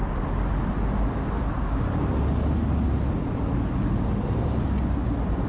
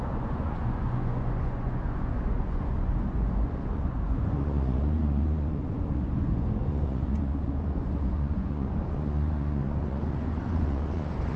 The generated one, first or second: second